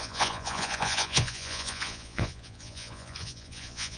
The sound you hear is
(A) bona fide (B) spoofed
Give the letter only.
B